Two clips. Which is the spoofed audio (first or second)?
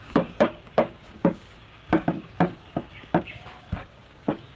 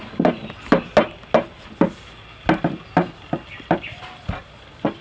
first